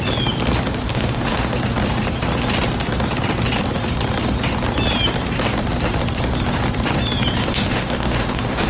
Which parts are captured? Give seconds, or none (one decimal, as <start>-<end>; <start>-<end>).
0.0-0.9; 1.5-7.4